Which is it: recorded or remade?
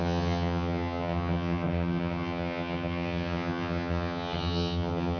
remade